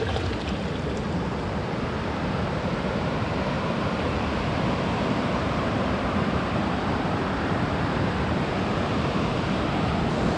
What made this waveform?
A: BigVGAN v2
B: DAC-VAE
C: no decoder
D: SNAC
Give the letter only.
A